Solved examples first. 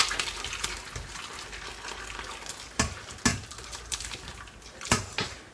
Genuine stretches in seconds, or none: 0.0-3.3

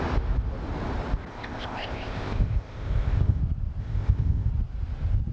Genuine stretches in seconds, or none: 0.0-1.3; 3.4-3.8; 4.5-5.3

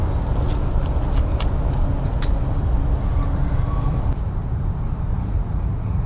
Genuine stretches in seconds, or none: 0.0-5.1

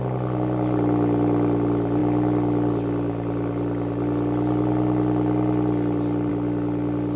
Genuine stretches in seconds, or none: 0.0-7.2